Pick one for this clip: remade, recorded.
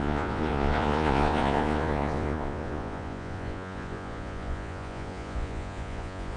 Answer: remade